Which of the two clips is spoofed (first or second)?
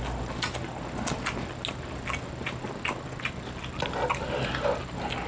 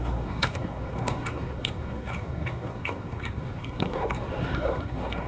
second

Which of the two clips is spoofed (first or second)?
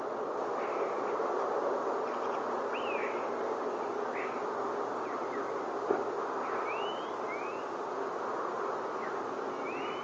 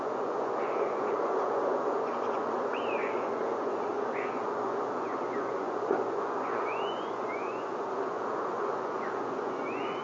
second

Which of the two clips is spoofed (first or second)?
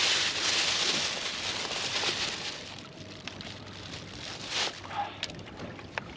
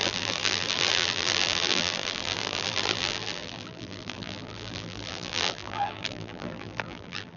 second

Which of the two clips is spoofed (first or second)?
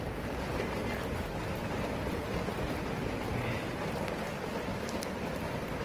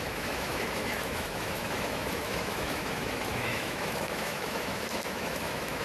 second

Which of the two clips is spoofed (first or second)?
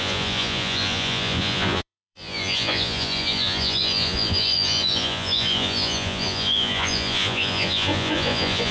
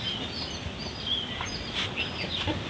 first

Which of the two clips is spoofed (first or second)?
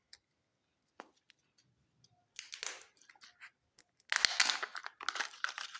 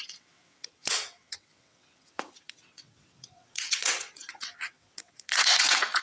second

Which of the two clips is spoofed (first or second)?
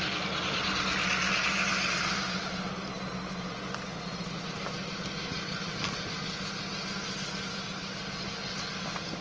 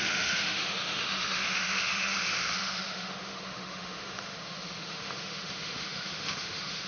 second